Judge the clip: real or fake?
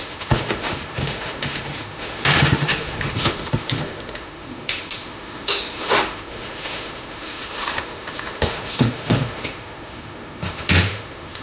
fake